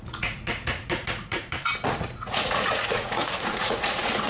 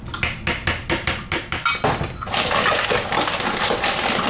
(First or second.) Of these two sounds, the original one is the second